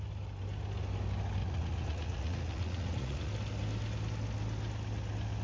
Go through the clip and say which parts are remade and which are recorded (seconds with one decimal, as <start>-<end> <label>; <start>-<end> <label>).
0.0-1.4 recorded; 1.4-3.3 remade; 3.3-5.4 recorded